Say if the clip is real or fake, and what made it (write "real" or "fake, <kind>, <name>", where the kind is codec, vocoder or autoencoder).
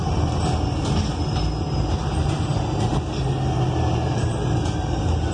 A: real